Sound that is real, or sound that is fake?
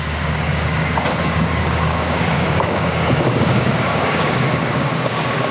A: fake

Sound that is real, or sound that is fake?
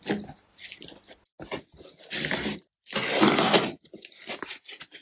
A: real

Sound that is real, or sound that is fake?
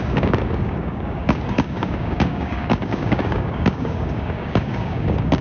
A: fake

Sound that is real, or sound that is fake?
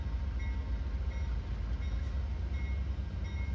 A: real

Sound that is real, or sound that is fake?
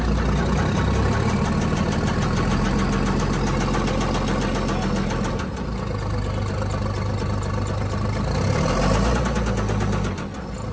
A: real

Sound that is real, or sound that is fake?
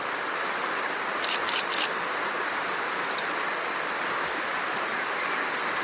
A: real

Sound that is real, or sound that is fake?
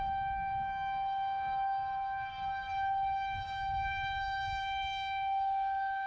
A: fake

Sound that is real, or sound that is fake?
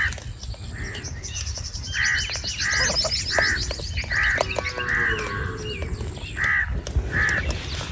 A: real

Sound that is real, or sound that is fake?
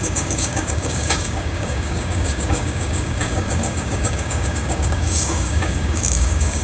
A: fake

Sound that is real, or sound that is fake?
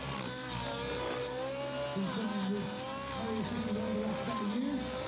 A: real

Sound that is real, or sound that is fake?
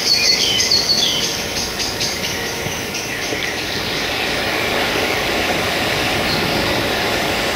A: fake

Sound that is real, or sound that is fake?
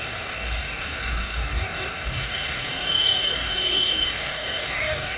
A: fake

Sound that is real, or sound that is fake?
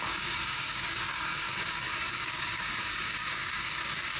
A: fake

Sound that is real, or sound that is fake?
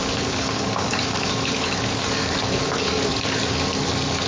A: fake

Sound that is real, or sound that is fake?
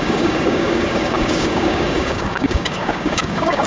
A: fake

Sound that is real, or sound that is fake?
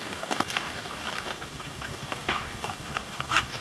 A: fake